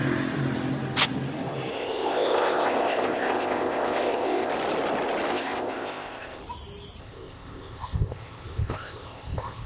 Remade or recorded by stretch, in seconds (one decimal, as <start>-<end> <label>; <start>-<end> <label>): 0.0-1.7 recorded; 1.7-4.5 remade; 4.5-5.3 recorded; 5.3-6.4 remade; 6.4-7.0 recorded; 7.0-9.7 remade